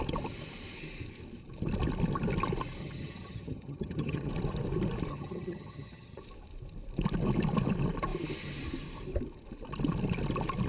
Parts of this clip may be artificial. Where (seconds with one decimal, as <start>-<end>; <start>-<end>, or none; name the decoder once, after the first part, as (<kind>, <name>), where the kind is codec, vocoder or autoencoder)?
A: 2.8-4.3 (vocoder, HiFi-GAN); 5.1-6.2